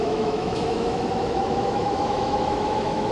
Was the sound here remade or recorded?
remade